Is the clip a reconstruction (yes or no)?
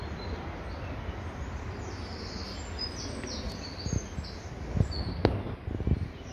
no